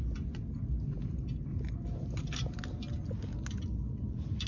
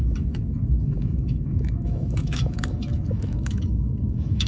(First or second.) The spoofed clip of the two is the second